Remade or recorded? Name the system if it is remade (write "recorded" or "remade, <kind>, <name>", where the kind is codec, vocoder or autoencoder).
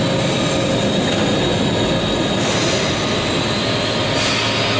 recorded